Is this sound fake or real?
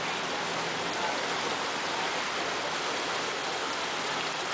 real